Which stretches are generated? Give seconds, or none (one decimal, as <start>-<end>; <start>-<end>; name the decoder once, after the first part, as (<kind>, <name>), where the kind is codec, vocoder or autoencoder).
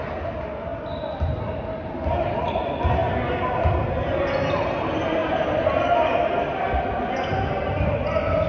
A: none